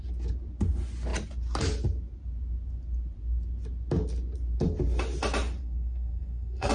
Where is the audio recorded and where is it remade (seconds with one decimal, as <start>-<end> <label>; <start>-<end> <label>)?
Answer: 0.0-5.6 recorded; 5.6-6.7 remade

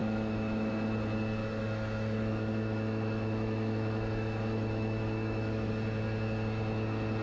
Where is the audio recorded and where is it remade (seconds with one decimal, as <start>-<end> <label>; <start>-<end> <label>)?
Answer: 0.0-0.7 remade; 0.7-1.4 recorded; 1.4-5.7 remade; 5.7-7.2 recorded

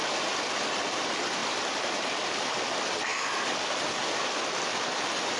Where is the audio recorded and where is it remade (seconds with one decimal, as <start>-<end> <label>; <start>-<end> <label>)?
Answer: 0.0-1.4 recorded; 1.4-2.6 remade; 2.6-5.4 recorded

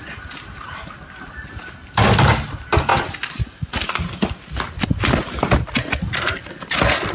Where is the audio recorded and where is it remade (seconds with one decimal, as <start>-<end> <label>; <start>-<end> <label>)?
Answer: 0.0-7.1 recorded

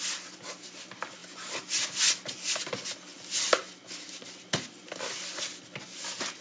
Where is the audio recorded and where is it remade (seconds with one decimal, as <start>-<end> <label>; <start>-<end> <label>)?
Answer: 0.0-6.4 recorded

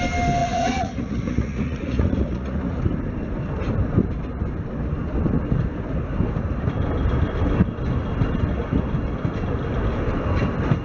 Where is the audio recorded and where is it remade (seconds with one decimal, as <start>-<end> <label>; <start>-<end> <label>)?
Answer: 0.0-0.4 recorded; 0.4-2.8 remade; 2.8-10.8 recorded

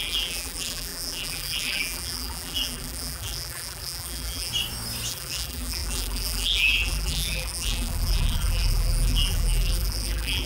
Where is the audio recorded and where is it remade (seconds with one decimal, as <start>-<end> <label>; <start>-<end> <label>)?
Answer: 0.0-4.5 remade; 4.5-5.1 recorded; 5.1-10.5 remade

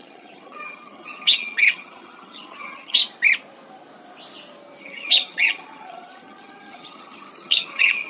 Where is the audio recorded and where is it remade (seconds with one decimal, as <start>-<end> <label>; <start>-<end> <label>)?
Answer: 0.0-3.0 remade; 3.0-4.8 recorded; 4.8-8.1 remade